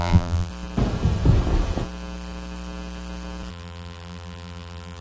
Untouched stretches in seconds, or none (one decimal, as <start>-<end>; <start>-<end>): 0.5-3.5